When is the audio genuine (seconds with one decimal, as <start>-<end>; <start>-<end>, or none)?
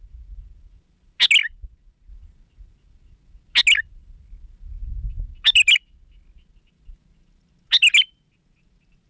0.0-9.1